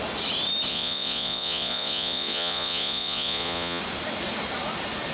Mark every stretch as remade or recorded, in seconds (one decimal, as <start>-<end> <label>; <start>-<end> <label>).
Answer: 0.0-0.7 recorded; 0.7-3.8 remade; 3.8-5.1 recorded